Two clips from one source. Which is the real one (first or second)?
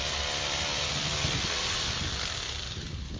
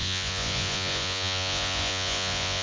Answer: first